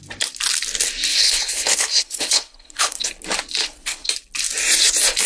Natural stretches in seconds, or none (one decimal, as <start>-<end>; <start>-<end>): 0.0-1.1; 3.0-3.6; 4.1-5.3